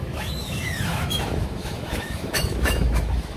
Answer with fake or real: fake